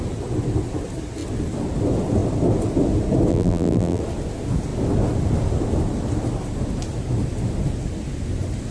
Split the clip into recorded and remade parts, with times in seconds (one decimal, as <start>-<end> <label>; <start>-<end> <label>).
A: 0.0-3.3 recorded; 3.3-4.0 remade; 4.0-8.7 recorded